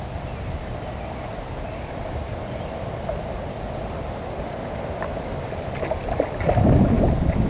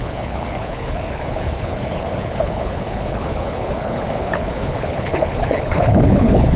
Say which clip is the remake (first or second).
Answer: second